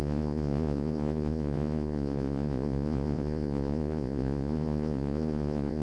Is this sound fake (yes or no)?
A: yes